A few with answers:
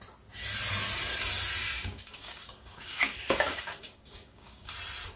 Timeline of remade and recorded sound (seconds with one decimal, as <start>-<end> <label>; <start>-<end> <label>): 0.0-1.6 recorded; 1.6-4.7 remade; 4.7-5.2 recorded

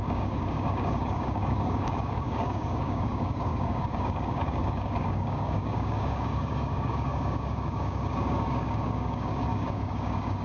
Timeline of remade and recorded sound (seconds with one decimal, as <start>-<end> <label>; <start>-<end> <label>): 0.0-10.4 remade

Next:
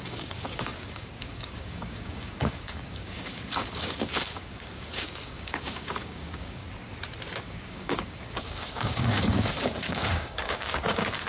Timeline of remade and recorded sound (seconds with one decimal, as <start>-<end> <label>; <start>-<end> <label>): 0.0-6.6 remade; 6.6-7.4 recorded; 7.4-11.3 remade

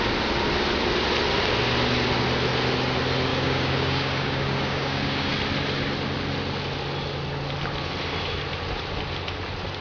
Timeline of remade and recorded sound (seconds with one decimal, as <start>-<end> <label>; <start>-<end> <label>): 0.0-3.3 recorded; 3.3-5.3 remade; 5.3-9.8 recorded

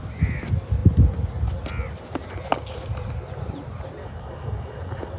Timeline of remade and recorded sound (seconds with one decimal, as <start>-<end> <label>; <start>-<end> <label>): 0.0-4.0 recorded; 4.0-5.2 remade

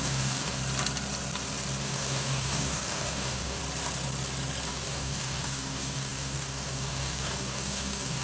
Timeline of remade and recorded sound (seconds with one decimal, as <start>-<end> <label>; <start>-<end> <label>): 0.0-0.6 remade; 0.6-1.8 recorded; 1.8-3.6 remade; 3.6-4.7 recorded; 4.7-8.2 remade

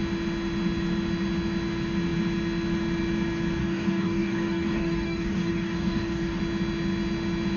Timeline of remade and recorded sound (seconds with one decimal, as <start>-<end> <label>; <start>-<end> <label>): 0.0-3.6 recorded; 3.6-6.4 remade; 6.4-7.6 recorded

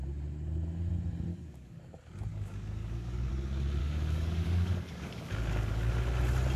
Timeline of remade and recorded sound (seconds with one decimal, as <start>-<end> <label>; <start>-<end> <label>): 0.0-1.3 recorded; 1.3-1.8 remade; 1.8-2.3 recorded; 2.3-3.3 remade; 3.3-3.8 recorded; 3.8-5.9 remade; 5.9-6.6 recorded